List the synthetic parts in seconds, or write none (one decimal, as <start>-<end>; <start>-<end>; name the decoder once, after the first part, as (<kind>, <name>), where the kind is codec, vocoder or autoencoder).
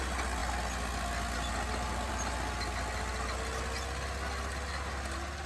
none